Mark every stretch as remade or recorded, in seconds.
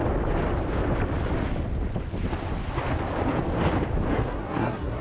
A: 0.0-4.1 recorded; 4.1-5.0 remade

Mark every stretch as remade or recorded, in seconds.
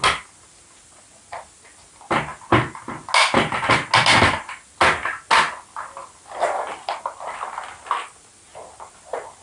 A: 0.0-9.4 recorded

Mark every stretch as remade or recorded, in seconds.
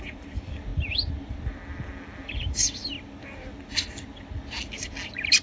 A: 0.0-5.4 recorded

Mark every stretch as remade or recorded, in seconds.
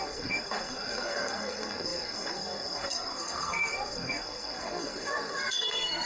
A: 0.0-6.1 remade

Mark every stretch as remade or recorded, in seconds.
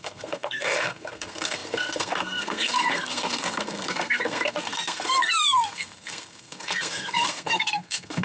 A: 0.0-8.2 remade